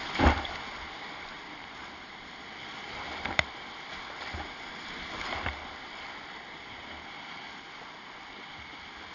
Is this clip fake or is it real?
real